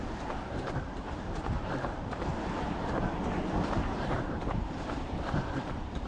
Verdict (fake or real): fake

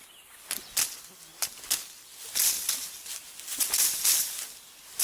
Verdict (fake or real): real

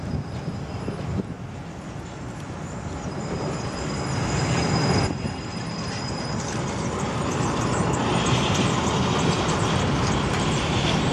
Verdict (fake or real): fake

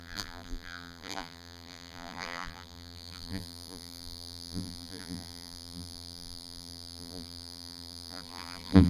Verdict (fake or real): fake